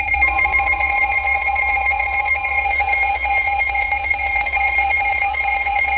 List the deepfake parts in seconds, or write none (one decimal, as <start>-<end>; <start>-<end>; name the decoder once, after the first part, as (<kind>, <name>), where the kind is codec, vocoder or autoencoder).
0.0-6.0 (vocoder, Vocos)